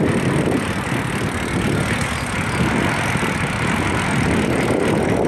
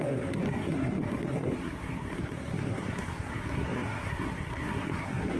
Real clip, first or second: first